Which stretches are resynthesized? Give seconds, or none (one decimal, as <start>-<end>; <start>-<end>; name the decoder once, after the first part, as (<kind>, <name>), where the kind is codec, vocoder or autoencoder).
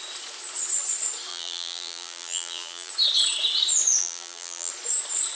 1.3-2.9 (vocoder, BigVGAN v2); 4.0-4.7